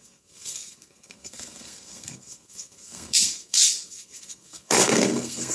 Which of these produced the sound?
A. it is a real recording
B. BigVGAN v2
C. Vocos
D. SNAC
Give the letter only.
D